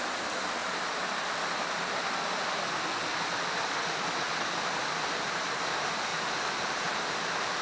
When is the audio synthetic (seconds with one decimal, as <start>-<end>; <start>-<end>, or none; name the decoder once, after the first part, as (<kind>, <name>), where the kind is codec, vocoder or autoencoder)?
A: 6.1-7.6 (vocoder, BigVGAN v2)